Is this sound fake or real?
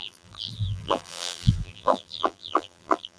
fake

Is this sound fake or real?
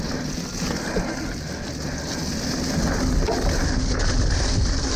real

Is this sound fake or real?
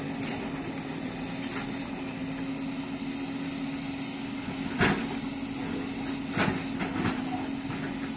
real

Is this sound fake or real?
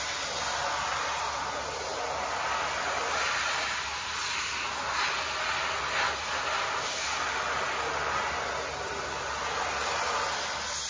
real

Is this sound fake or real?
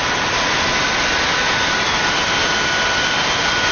real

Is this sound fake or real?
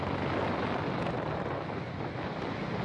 real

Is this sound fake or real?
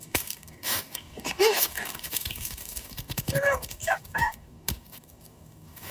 fake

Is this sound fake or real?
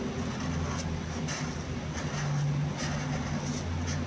real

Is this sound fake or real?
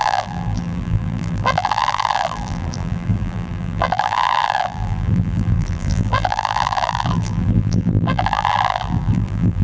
fake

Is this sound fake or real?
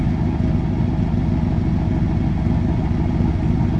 real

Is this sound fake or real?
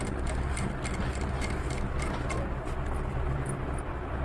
real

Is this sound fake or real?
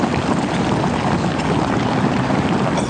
real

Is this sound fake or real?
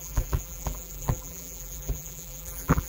fake